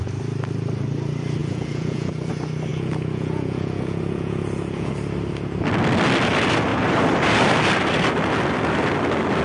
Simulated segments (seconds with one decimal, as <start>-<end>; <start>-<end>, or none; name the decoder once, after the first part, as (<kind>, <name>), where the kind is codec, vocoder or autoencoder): 1.4-2.3 (vocoder, Vocos); 2.7-4.9